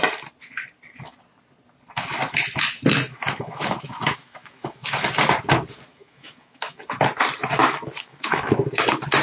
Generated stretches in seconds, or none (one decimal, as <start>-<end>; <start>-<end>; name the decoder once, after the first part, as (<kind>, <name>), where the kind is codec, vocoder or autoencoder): 3.1-4.9 (autoencoder, DAC-VAE); 5.9-7.1; 7.6-8.7